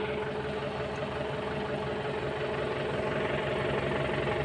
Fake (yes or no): no